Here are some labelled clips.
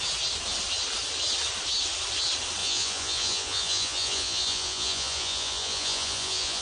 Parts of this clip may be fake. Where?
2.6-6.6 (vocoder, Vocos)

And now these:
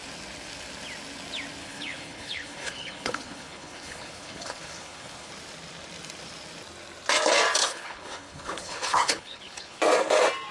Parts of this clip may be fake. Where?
1.6-5.3 (codec, HILCodec); 7.6-9.8

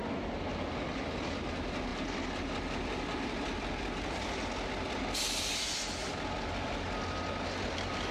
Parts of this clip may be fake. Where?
none